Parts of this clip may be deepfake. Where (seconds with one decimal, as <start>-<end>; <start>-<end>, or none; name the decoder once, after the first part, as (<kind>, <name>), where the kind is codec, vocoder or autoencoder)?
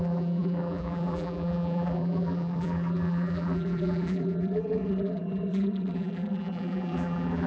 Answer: 0.0-7.5 (vocoder, BigVGAN v2)